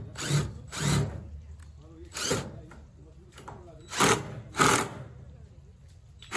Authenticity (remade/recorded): recorded